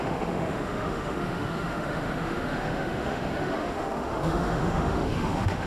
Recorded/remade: remade